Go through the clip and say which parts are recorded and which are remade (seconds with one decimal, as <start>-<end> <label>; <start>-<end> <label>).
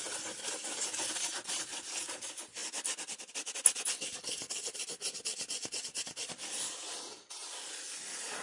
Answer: 0.0-8.4 recorded